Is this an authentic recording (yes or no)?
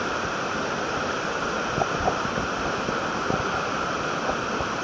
no